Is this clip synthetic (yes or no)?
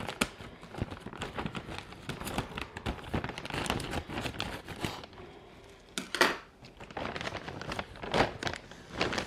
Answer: no